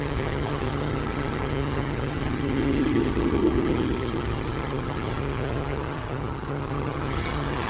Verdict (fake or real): fake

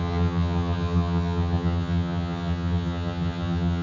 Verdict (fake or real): fake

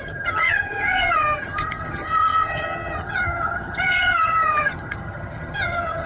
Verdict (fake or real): fake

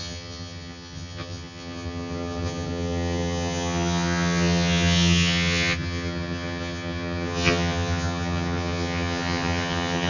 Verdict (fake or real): fake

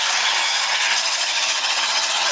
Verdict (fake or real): fake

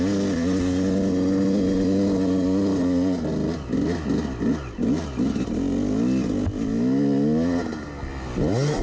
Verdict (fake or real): real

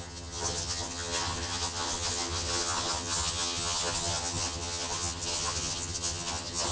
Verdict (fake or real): fake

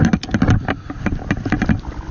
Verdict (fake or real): real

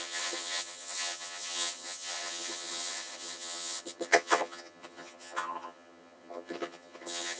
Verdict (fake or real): fake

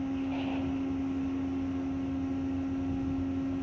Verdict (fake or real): real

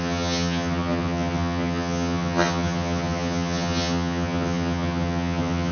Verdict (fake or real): fake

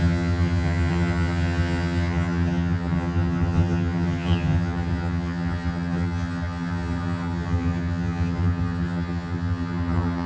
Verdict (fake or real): fake